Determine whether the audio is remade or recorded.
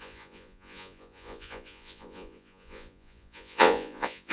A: remade